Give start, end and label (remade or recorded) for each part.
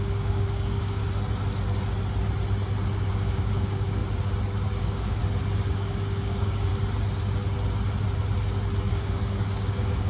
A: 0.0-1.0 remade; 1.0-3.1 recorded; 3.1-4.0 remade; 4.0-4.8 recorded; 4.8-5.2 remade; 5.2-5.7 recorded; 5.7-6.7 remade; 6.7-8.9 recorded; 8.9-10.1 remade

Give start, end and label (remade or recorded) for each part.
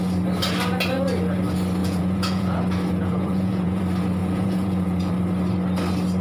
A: 0.0-1.8 recorded; 1.8-2.6 remade; 2.6-3.0 recorded; 3.0-3.8 remade; 3.8-4.2 recorded; 4.2-5.1 remade; 5.1-6.2 recorded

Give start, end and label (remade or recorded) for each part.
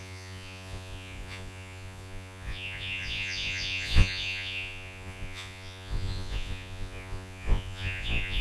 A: 0.0-8.4 remade